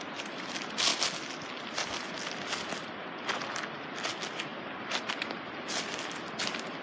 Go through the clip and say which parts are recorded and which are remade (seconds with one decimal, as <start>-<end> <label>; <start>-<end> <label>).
0.0-6.8 recorded